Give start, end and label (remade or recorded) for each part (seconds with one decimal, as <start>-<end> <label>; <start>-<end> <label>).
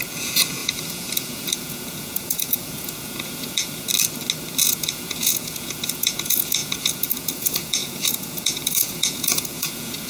0.0-3.9 remade; 3.9-4.6 recorded; 4.6-10.1 remade